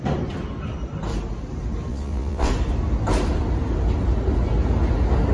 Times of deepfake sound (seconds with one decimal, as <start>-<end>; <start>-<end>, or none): 1.9-2.5